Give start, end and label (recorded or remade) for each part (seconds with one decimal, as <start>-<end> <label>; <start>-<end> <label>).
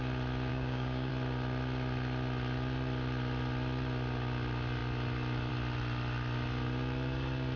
0.0-0.5 recorded; 0.5-1.1 remade; 1.1-7.6 recorded